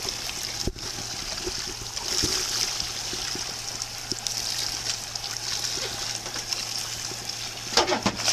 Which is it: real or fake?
real